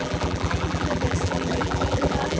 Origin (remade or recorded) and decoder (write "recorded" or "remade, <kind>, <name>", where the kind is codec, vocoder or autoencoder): remade, vocoder, BigVGAN v2